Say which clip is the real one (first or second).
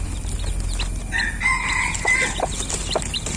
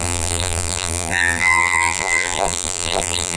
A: first